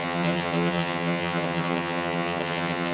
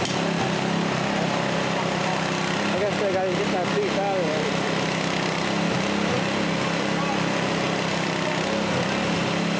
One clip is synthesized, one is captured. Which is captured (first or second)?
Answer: second